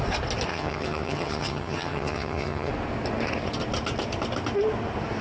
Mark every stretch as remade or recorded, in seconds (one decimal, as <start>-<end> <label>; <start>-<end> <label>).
0.0-0.5 recorded; 0.5-2.7 remade; 2.7-5.2 recorded